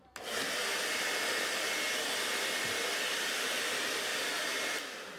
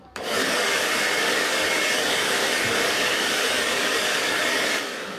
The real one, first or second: first